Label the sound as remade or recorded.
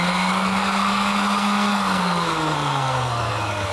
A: remade